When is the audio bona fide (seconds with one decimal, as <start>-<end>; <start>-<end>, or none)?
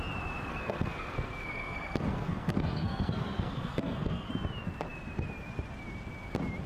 0.0-0.5; 4.3-6.7